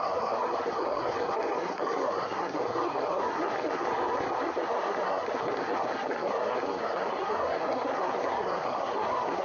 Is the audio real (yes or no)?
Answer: no